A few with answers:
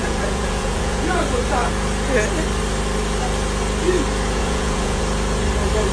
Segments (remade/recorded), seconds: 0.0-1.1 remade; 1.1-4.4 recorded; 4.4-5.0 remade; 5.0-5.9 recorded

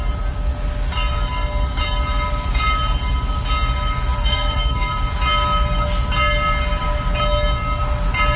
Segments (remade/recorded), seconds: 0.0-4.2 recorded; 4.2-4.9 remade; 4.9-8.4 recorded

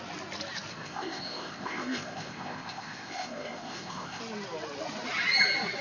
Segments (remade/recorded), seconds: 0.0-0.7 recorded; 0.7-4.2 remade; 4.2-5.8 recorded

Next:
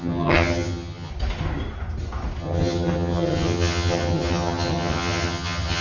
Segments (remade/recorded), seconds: 0.0-1.1 remade; 1.1-2.4 recorded; 2.4-5.8 remade